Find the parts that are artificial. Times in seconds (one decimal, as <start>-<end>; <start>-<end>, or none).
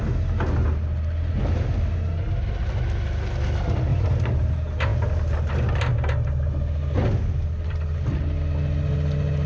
3.9-4.5